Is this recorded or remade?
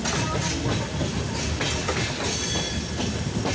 recorded